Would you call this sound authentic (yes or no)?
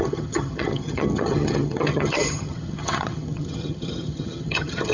no